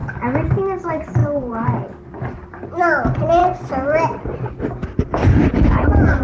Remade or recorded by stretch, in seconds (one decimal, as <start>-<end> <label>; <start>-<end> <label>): 0.0-1.2 recorded; 1.2-2.3 remade; 2.3-6.2 recorded